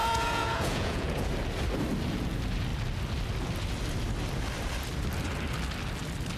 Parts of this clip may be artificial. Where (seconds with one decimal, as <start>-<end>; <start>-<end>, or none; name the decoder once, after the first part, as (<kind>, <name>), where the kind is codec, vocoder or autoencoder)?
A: 0.0-1.3 (vocoder, Vocos)